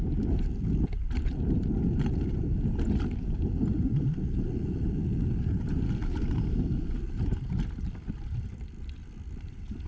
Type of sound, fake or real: real